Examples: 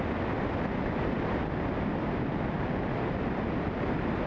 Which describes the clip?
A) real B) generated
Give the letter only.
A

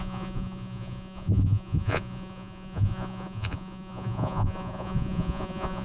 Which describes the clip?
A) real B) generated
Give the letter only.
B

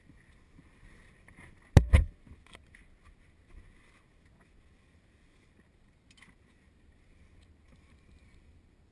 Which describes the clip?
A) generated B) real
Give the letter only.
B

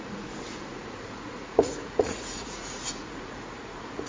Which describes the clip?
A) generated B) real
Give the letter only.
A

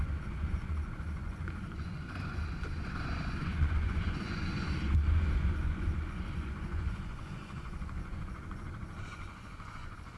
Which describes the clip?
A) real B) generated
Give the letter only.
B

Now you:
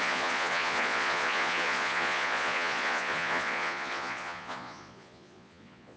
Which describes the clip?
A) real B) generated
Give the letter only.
B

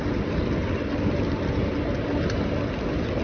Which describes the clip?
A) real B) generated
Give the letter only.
A